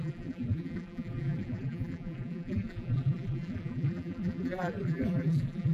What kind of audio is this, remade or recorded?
remade